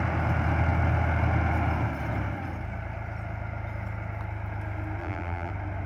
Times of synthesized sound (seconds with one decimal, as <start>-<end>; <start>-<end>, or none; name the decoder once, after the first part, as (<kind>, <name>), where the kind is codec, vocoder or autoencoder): 5.0-5.5 (vocoder, BigVGAN v2)